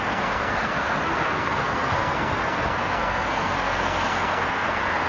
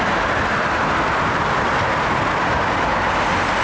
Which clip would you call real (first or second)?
second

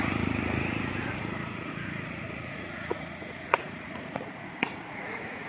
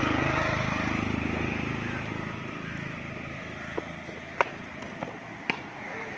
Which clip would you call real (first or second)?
second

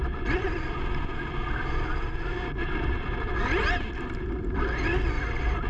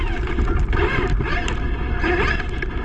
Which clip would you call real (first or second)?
second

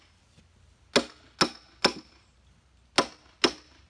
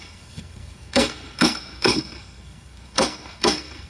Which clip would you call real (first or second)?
first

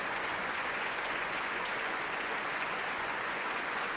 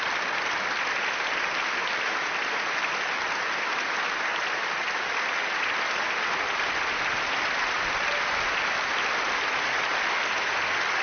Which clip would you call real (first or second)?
second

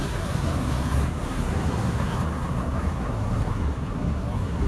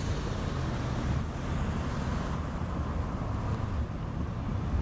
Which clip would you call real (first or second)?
second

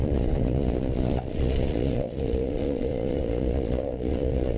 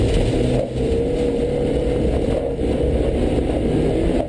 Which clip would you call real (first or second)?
second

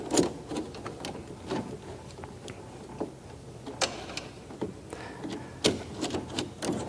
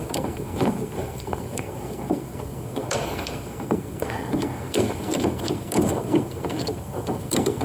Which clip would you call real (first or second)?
first